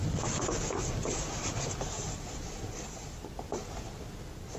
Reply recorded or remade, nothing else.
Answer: recorded